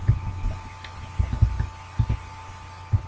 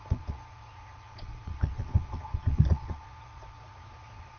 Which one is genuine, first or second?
first